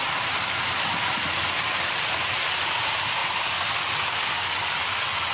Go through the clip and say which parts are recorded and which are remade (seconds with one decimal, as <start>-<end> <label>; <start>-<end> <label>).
0.0-5.3 recorded